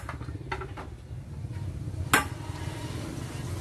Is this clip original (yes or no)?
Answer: yes